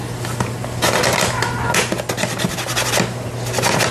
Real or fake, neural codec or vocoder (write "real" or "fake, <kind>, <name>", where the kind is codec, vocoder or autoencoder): real